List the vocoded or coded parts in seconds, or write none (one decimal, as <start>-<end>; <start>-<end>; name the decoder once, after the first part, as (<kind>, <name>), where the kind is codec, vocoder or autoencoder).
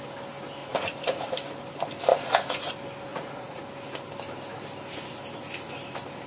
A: 0.6-1.3 (vocoder, Vocos); 2.1-2.7; 3.1-3.6